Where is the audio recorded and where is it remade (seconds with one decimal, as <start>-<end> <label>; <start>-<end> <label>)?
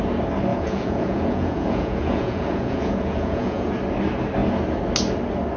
0.0-0.5 recorded; 0.5-3.7 remade; 3.7-5.6 recorded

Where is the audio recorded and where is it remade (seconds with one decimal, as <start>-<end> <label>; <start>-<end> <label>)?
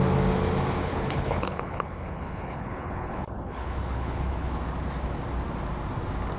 0.0-0.8 recorded; 0.8-4.6 remade; 4.6-6.4 recorded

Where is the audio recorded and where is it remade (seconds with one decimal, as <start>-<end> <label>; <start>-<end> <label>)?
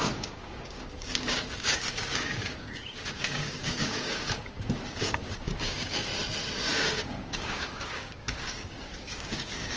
0.0-6.1 remade; 6.1-6.7 recorded; 6.7-9.8 remade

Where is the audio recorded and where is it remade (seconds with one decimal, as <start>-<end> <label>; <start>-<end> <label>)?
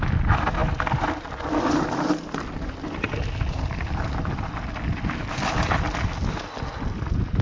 0.0-7.4 recorded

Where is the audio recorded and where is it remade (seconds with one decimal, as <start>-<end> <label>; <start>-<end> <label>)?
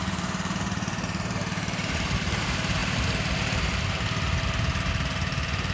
0.0-2.8 remade; 2.8-4.9 recorded; 4.9-5.7 remade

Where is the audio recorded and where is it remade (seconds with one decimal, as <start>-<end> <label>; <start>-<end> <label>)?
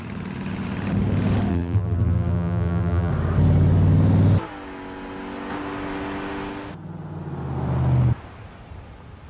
0.0-1.5 recorded; 1.5-3.1 remade; 3.1-9.3 recorded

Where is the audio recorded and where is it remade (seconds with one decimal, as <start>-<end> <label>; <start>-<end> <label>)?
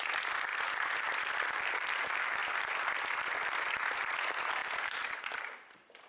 0.0-0.5 recorded; 0.5-1.1 remade; 1.1-6.1 recorded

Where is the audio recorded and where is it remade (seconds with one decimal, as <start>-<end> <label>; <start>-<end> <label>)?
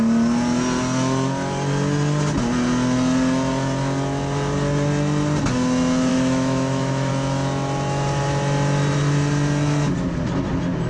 0.0-6.1 recorded; 6.1-7.1 remade; 7.1-10.9 recorded